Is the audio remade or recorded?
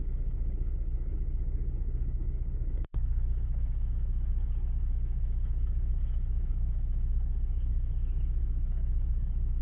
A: remade